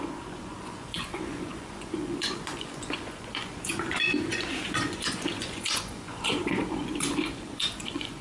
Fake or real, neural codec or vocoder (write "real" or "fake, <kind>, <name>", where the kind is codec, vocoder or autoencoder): fake, vocoder, Vocos